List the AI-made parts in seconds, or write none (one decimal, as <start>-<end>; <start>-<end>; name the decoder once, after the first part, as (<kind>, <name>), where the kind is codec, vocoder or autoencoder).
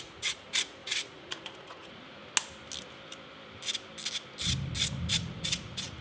0.0-2.2 (vocoder, Vocos); 5.1-6.0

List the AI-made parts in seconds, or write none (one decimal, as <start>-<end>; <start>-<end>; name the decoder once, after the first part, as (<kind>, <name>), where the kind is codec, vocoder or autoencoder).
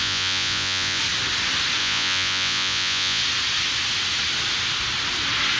0.0-1.0 (vocoder, Vocos); 1.8-3.2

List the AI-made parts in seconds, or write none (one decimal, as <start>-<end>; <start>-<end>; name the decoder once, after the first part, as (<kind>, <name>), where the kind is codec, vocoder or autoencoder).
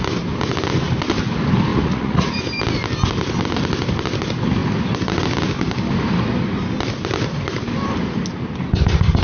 1.7-2.4 (vocoder, Vocos)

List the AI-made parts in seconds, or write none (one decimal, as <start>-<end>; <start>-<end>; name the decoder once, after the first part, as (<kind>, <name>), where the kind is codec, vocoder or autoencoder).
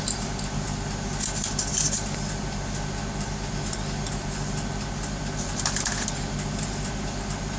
none